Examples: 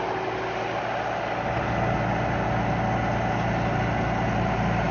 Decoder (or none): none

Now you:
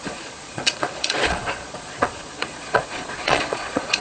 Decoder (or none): vocoder, Vocos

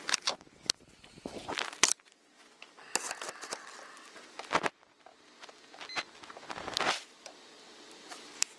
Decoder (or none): none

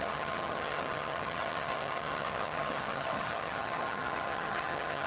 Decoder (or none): vocoder, HiFi-GAN